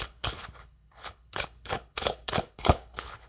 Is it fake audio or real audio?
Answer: fake